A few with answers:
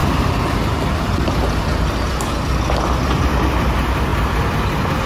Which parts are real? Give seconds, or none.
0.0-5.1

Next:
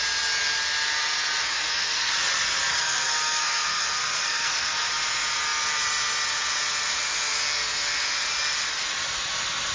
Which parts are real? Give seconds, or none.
0.0-1.4; 2.1-2.7; 4.9-9.7

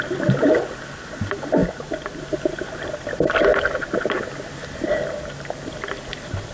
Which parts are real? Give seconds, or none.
0.0-6.5